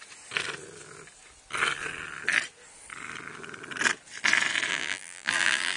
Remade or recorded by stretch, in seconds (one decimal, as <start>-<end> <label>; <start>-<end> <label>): 0.0-4.7 recorded; 4.7-5.8 remade